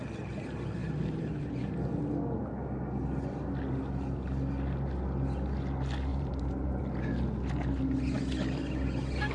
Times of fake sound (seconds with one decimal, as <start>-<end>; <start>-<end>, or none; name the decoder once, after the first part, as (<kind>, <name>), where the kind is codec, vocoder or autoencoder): 0.8-1.7 (vocoder, BigVGAN v2); 6.1-6.8